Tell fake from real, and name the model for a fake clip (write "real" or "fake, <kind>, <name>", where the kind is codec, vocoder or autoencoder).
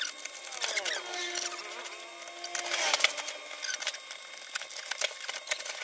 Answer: real